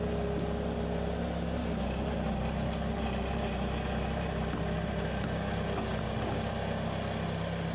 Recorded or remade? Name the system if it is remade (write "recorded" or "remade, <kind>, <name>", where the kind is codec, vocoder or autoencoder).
recorded